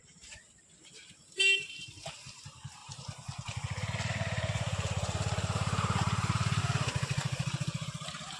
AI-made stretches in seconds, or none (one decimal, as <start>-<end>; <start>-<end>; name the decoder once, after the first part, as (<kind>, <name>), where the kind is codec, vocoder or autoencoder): 0.0-8.4 (vocoder, BigVGAN v2)